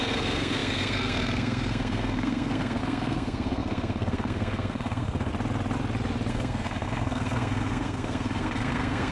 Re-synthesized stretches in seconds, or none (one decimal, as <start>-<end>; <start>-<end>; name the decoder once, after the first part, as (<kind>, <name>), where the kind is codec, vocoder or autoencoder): 0.0-5.3 (codec, SNAC); 6.3-9.1